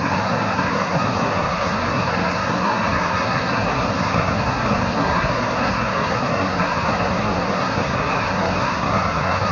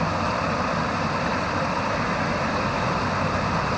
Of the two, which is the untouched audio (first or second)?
second